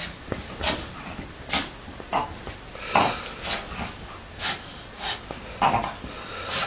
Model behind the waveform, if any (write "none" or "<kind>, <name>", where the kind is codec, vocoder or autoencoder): none